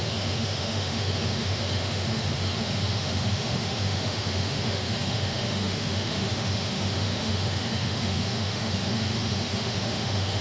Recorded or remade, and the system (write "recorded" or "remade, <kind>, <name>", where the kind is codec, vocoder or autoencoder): remade, autoencoder, DAC-VAE